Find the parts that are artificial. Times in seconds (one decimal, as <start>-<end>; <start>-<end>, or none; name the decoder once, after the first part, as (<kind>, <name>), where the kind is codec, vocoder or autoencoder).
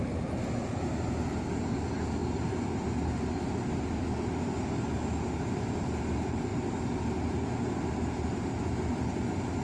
none